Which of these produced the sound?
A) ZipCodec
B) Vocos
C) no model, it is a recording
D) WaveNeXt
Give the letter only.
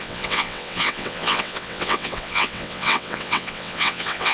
D